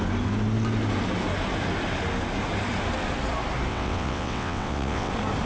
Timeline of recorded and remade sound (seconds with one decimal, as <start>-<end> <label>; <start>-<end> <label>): 0.0-3.7 recorded; 3.7-5.1 remade; 5.1-5.5 recorded